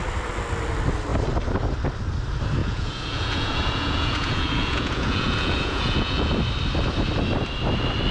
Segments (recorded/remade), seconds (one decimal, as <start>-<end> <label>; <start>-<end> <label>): 0.0-2.6 recorded; 2.6-6.3 remade; 6.3-8.1 recorded